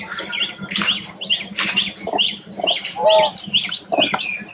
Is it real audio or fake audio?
real